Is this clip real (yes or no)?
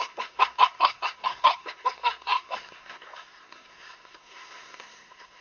no